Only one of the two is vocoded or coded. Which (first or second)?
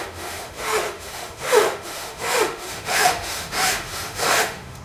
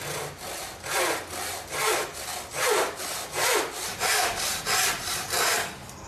first